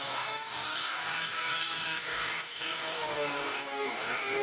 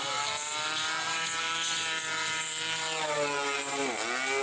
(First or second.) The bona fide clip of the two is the second